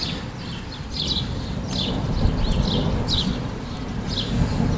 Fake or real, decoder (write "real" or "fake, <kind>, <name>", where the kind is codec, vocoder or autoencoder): real